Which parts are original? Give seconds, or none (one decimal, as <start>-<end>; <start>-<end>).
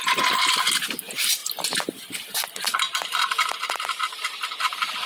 0.0-5.1